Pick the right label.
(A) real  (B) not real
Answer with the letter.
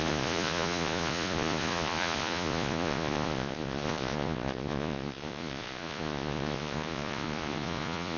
B